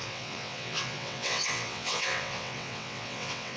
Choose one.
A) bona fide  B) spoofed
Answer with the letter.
B